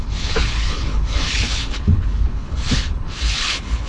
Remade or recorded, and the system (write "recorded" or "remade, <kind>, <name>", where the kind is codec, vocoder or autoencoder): remade, codec, HILCodec